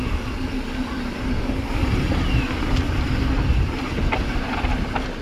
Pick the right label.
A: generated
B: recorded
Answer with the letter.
B